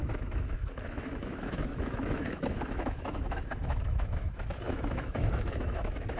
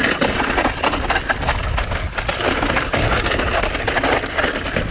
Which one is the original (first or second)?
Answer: second